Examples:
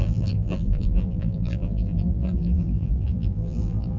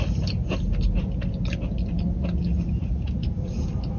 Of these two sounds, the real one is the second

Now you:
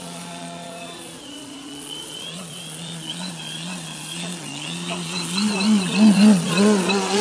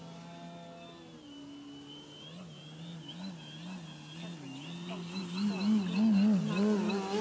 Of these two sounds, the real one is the second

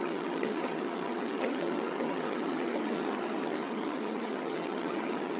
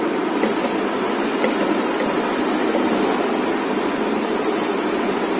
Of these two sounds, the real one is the second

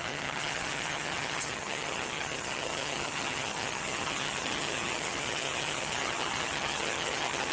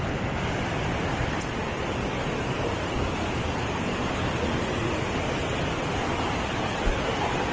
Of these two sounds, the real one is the second